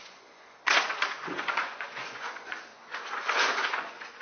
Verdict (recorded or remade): remade